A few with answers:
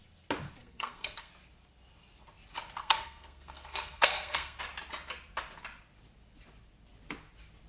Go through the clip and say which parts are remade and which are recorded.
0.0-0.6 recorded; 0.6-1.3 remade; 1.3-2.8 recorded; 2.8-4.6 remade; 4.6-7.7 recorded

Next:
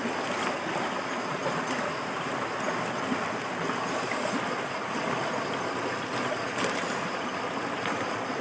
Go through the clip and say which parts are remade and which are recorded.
0.0-8.4 recorded

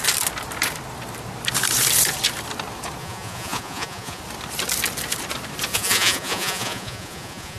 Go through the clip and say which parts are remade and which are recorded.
0.0-3.0 recorded; 3.0-4.2 remade; 4.2-5.7 recorded; 5.7-7.6 remade

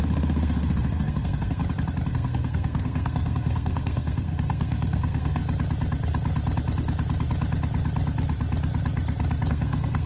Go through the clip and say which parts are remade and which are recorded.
0.0-1.6 remade; 1.6-2.1 recorded; 2.1-5.4 remade; 5.4-9.5 recorded; 9.5-10.1 remade

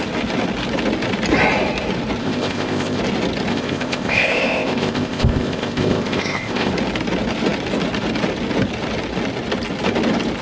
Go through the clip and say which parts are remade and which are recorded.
0.0-2.2 recorded; 2.2-3.0 remade; 3.0-3.5 recorded; 3.5-6.7 remade; 6.7-10.4 recorded